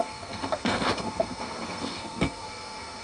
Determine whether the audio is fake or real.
fake